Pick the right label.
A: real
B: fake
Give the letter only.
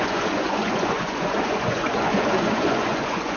B